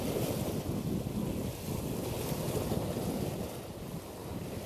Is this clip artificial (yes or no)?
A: no